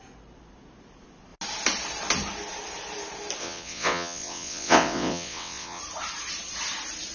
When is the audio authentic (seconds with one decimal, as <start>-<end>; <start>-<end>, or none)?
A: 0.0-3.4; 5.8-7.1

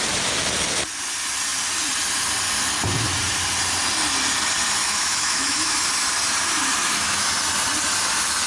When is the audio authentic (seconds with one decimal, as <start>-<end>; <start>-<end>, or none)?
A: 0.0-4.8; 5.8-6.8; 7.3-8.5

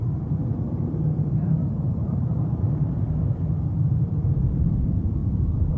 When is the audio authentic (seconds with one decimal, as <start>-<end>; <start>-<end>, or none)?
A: 2.7-5.8

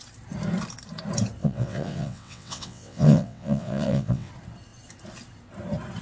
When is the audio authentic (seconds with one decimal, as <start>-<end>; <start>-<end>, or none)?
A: 0.0-1.4; 4.3-6.0